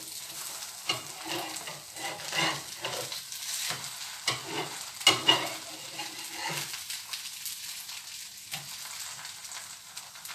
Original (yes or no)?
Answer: yes